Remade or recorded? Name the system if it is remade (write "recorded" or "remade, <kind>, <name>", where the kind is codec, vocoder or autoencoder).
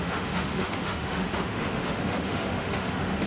remade, autoencoder, DAC-VAE